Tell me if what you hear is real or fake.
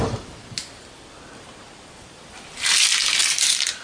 real